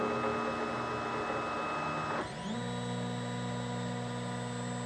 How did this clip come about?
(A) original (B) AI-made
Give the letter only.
A